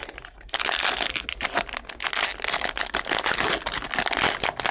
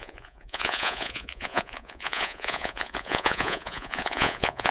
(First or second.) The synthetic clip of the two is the second